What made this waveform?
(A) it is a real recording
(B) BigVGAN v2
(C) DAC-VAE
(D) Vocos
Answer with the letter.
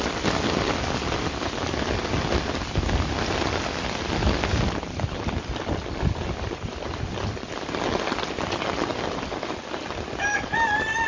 A